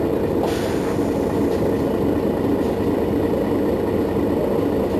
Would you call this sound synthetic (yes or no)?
no